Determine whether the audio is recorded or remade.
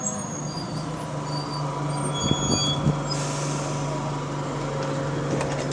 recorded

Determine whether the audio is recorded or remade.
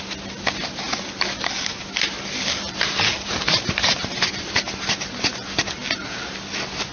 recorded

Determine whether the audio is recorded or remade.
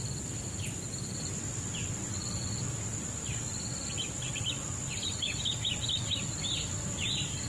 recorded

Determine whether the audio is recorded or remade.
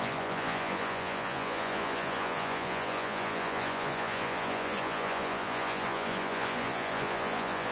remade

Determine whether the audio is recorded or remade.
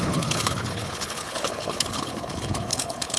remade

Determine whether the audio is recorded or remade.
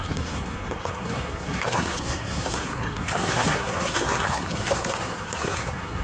remade